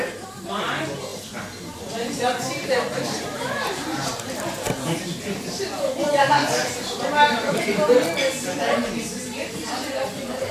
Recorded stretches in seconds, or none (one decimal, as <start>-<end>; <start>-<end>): none